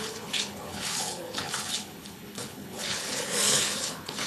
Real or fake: fake